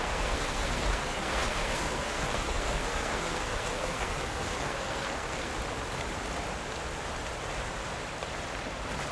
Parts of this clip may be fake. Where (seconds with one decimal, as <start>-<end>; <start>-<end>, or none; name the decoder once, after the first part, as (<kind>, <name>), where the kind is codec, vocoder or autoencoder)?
0.0-5.5 (codec, SNAC)